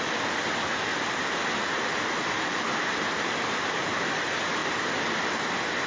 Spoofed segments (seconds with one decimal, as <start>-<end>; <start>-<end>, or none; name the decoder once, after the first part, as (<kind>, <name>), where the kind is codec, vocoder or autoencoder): 0.9-2.8 (vocoder, BigVGAN v2); 4.6-5.4